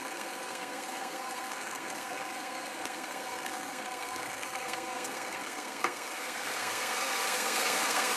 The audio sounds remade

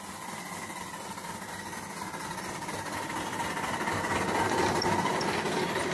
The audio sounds recorded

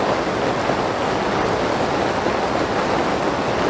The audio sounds recorded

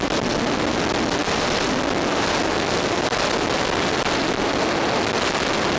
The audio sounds recorded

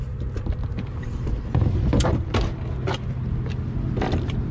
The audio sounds recorded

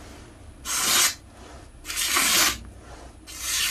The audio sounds recorded